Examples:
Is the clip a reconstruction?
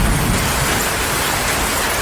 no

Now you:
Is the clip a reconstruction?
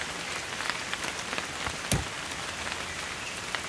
no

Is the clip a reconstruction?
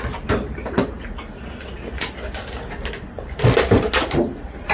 no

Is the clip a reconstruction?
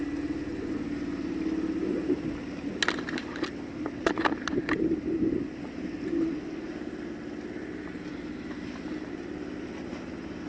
no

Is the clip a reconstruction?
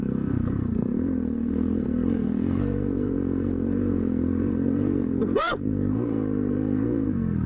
yes